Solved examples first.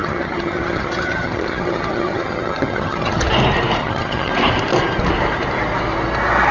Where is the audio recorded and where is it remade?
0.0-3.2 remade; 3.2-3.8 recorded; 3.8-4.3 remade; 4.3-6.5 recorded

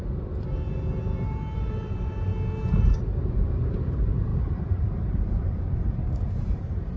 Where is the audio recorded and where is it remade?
0.0-1.5 recorded; 1.5-2.3 remade; 2.3-3.0 recorded; 3.0-7.0 remade

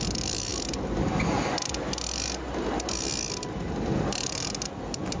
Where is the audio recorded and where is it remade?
0.0-5.2 recorded

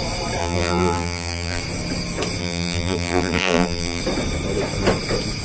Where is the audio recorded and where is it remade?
0.0-0.4 recorded; 0.4-1.6 remade; 1.6-2.4 recorded; 2.4-4.0 remade; 4.0-5.4 recorded

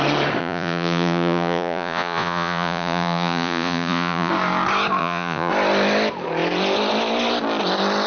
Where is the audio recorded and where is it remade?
0.0-0.4 recorded; 0.4-4.3 remade; 4.3-5.0 recorded; 5.0-5.5 remade; 5.5-8.1 recorded

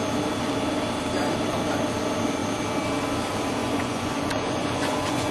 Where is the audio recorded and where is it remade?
0.0-3.6 recorded; 3.6-5.3 remade

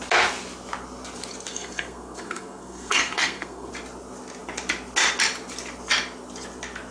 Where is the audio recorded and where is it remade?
0.0-1.5 recorded; 1.5-3.7 remade; 3.7-6.9 recorded

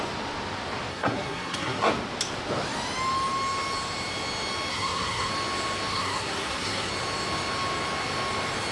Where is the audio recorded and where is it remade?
0.0-0.9 recorded; 0.9-1.9 remade; 1.9-4.7 recorded; 4.7-5.3 remade; 5.3-5.9 recorded; 5.9-6.9 remade; 6.9-8.7 recorded